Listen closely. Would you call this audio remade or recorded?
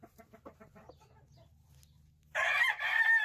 recorded